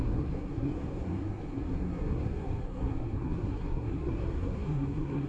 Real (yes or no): no